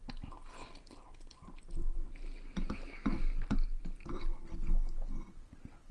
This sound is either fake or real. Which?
real